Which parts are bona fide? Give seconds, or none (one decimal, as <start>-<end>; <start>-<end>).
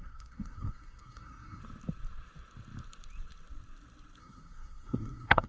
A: 1.6-4.2